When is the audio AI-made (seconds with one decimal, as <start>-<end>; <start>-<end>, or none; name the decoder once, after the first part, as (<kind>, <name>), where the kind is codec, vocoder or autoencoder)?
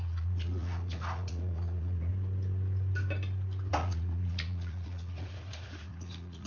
0.0-2.1 (vocoder, Vocos); 3.7-6.5